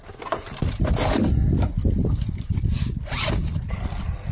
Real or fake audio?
real